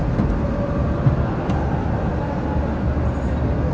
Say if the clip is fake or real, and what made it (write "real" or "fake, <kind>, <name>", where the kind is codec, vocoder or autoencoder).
real